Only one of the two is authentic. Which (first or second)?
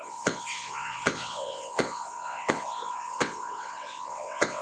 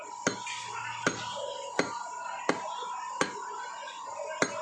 second